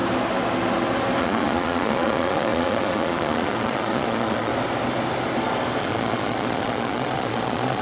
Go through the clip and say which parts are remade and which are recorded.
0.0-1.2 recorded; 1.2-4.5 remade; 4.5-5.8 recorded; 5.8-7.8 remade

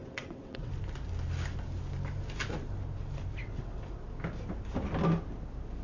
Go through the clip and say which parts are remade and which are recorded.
0.0-0.7 remade; 0.7-3.4 recorded; 3.4-4.0 remade; 4.0-5.8 recorded

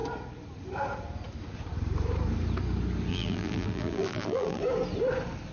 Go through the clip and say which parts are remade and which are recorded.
0.0-3.1 recorded; 3.1-4.6 remade; 4.6-5.5 recorded

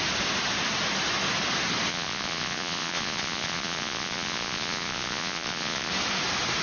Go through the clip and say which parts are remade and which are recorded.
0.0-1.9 recorded; 1.9-5.9 remade; 5.9-6.6 recorded

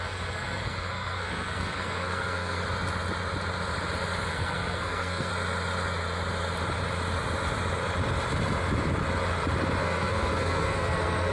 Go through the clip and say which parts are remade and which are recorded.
0.0-2.6 remade; 2.6-4.3 recorded; 4.3-5.3 remade; 5.3-9.8 recorded; 9.8-11.3 remade

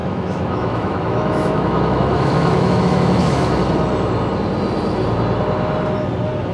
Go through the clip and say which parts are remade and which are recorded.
0.0-3.6 remade; 3.6-6.5 recorded

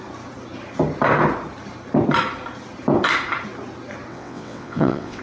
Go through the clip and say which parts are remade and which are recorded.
0.0-4.1 recorded; 4.1-5.2 remade

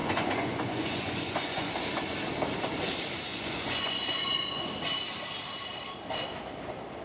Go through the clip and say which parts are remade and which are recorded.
0.0-1.7 remade; 1.7-3.3 recorded; 3.3-4.7 remade; 4.7-7.0 recorded